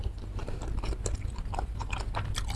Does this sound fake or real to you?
real